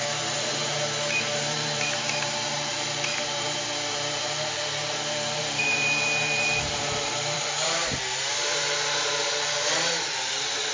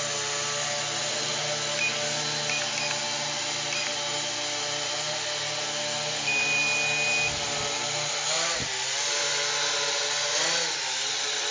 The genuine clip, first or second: second